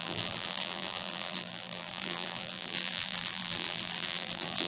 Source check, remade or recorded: remade